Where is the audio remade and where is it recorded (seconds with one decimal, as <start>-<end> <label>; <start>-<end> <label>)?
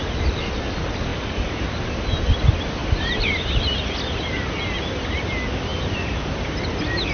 0.0-1.1 recorded; 1.1-1.9 remade; 1.9-2.8 recorded; 2.8-3.9 remade; 3.9-7.1 recorded